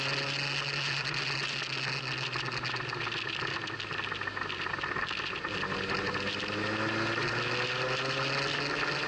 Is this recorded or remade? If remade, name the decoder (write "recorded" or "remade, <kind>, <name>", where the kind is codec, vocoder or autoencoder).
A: recorded